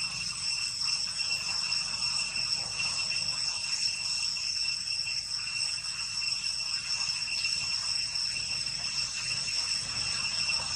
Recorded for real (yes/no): yes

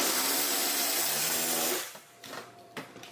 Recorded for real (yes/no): no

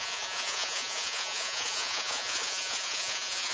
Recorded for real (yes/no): no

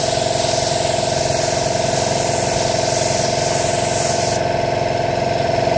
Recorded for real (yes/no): yes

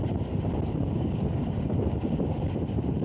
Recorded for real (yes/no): yes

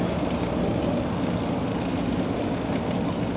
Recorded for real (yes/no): yes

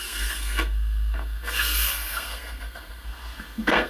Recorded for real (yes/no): no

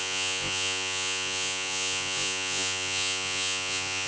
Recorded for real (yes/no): no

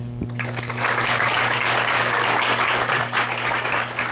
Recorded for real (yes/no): no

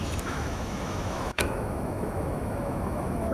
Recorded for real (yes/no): no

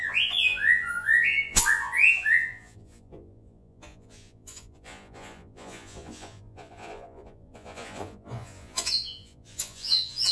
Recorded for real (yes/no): no